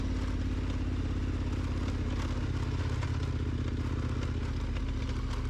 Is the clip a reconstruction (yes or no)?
no